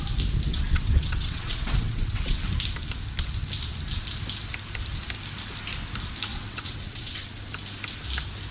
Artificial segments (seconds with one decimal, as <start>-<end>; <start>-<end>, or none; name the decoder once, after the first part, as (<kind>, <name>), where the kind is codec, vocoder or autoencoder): 0.5-2.4 (vocoder, WaveNeXt); 6.3-7.4